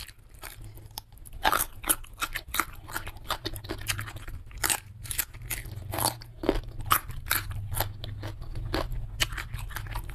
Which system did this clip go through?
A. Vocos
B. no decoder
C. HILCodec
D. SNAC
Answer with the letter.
B